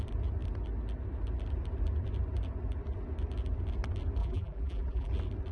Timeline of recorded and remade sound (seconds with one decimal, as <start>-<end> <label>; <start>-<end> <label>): 0.0-4.2 recorded; 4.2-5.1 remade; 5.1-5.5 recorded

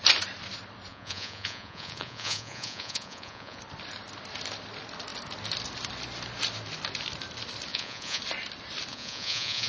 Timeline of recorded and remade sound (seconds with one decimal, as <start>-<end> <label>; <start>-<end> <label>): 0.0-0.9 recorded; 0.9-3.6 remade; 3.6-7.7 recorded; 7.7-8.2 remade; 8.2-8.9 recorded; 8.9-9.7 remade

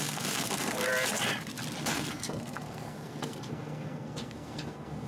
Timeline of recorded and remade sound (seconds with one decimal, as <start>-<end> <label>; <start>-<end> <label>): 0.0-0.9 remade; 0.9-1.8 recorded; 1.8-5.1 remade

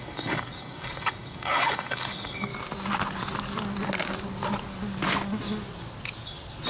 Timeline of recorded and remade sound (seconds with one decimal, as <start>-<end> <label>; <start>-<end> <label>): 0.0-2.5 remade; 2.5-6.7 recorded

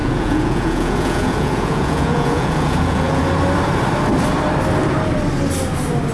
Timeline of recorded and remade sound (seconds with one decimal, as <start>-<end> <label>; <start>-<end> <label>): 0.0-3.2 remade; 3.2-6.1 recorded